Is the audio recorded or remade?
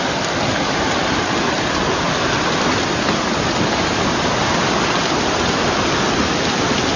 recorded